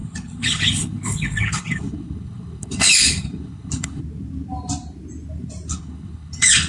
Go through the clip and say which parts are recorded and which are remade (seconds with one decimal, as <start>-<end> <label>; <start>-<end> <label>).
0.0-4.0 remade; 4.0-5.7 recorded; 5.7-6.7 remade

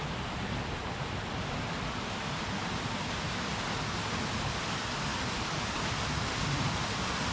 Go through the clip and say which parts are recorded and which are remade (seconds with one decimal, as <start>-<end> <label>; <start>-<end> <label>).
0.0-7.3 recorded

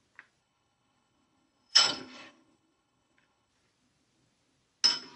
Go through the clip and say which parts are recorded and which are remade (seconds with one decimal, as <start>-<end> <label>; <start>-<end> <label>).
0.0-0.4 recorded; 0.4-3.5 remade; 3.5-5.2 recorded

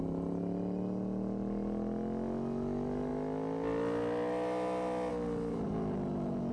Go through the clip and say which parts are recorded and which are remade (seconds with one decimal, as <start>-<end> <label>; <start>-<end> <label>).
0.0-6.5 recorded

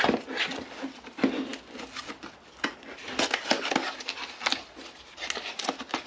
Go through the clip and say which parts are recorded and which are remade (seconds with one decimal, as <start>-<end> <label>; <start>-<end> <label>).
0.0-6.1 recorded

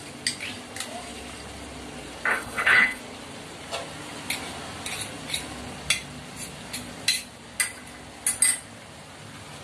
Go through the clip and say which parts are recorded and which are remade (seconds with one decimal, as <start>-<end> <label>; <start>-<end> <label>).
0.0-2.3 recorded; 2.3-3.0 remade; 3.0-9.6 recorded

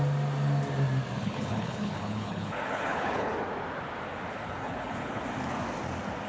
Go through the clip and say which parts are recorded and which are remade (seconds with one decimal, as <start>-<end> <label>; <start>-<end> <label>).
0.0-1.2 recorded; 1.2-3.3 remade; 3.3-4.3 recorded; 4.3-5.2 remade; 5.2-6.3 recorded

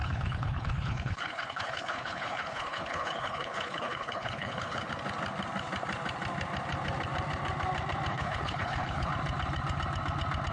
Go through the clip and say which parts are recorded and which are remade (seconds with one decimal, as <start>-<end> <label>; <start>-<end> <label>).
0.0-4.9 remade; 4.9-8.1 recorded; 8.1-9.1 remade; 9.1-10.5 recorded